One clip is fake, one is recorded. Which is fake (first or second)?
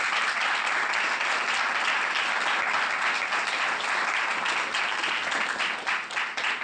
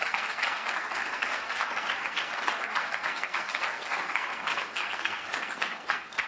second